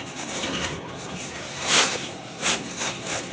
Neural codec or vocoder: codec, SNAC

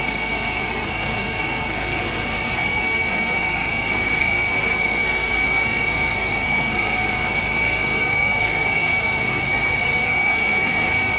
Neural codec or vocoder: codec, SNAC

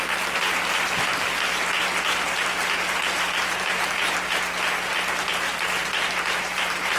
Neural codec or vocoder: none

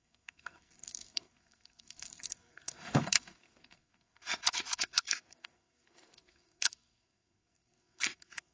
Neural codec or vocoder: codec, SNAC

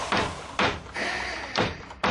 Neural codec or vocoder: none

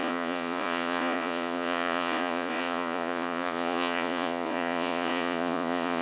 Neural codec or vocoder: vocoder, Vocos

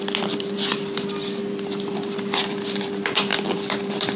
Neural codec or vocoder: vocoder, BigVGAN v2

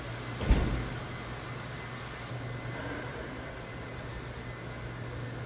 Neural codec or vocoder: none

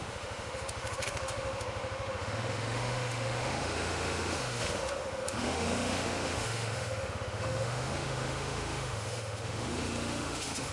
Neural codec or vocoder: autoencoder, DAC-VAE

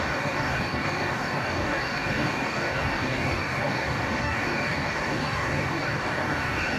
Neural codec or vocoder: codec, DAC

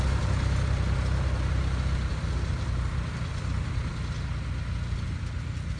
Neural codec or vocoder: none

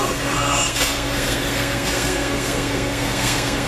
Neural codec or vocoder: codec, SNAC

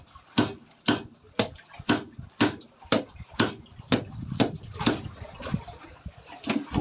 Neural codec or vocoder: none